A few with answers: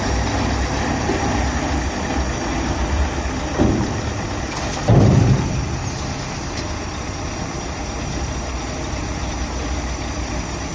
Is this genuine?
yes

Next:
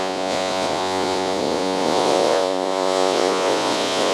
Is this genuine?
no